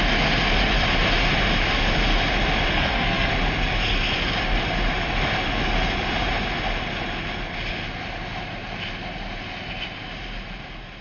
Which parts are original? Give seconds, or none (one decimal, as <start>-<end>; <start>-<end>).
0.0-2.7; 3.3-11.0